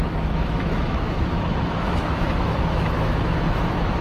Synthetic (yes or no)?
yes